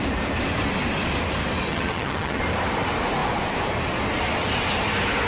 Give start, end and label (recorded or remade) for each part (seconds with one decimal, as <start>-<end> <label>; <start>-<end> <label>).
0.0-1.7 recorded; 1.7-2.4 remade; 2.4-5.3 recorded